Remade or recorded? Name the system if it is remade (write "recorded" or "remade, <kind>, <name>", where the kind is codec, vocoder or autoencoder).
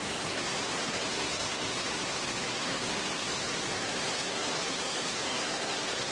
remade, codec, SNAC